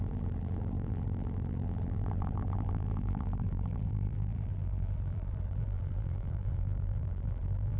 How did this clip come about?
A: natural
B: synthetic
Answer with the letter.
B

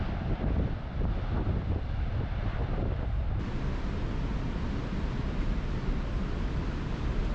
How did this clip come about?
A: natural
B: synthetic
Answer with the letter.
A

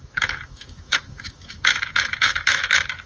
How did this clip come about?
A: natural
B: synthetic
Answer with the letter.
B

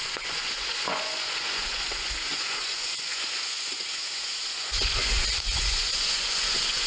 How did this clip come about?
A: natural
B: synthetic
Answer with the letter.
B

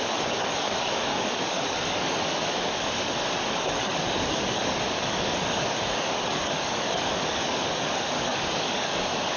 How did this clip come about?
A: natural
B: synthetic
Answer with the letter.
B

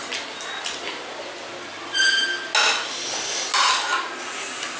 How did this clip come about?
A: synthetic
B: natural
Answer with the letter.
B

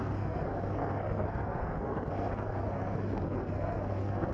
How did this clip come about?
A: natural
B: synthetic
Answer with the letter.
B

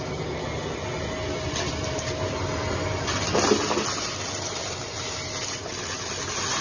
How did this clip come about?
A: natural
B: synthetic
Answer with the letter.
A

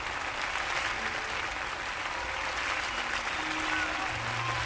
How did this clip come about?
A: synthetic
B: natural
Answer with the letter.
B